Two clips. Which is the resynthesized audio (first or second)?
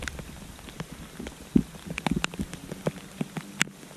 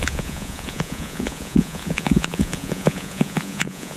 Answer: second